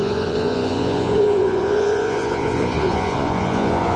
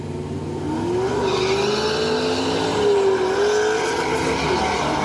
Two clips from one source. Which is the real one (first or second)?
second